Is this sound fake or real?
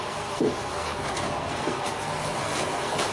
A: fake